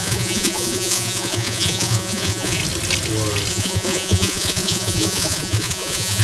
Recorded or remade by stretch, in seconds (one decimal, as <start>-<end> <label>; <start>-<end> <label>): 0.0-2.6 remade; 2.6-3.5 recorded; 3.5-6.2 remade